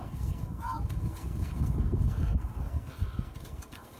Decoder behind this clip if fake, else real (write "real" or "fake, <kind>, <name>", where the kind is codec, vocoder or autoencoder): fake, codec, SNAC